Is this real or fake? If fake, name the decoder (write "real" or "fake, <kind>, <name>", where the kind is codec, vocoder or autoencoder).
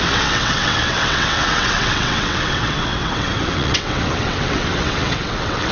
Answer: fake, vocoder, WaveNeXt